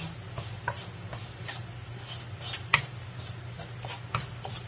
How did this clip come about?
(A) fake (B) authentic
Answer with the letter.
B